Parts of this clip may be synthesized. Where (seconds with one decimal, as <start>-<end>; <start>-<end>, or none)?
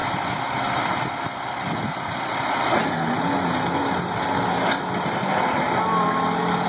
none